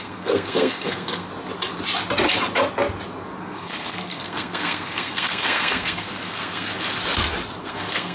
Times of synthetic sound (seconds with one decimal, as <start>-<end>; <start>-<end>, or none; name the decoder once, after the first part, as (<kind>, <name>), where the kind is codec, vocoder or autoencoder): 0.0-1.3 (codec, SNAC); 3.4-6.7; 7.6-8.1